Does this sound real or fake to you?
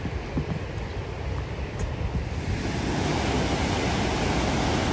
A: real